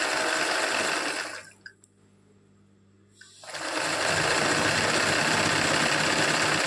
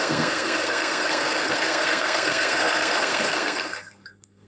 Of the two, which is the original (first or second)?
first